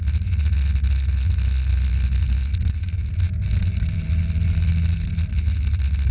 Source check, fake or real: real